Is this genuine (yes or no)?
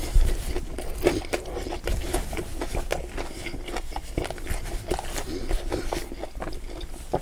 yes